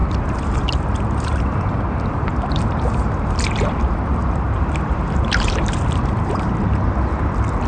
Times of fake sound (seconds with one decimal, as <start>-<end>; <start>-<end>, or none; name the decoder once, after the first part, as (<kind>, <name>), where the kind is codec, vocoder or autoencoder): 0.0-1.4 (vocoder, BigVGAN v2); 2.3-6.5